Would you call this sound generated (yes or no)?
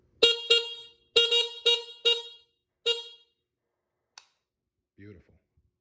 no